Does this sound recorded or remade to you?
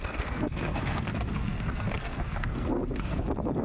remade